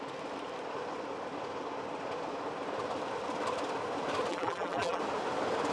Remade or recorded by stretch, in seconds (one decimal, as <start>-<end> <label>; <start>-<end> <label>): 0.0-4.3 recorded; 4.3-5.0 remade; 5.0-5.7 recorded